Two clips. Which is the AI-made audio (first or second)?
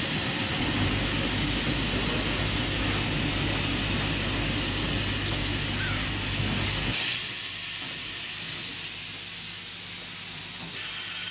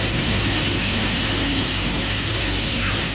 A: second